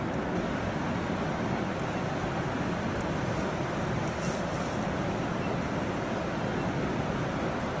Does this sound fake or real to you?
real